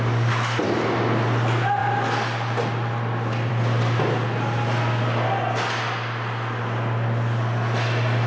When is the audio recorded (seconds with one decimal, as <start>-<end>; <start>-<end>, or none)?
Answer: 0.0-8.3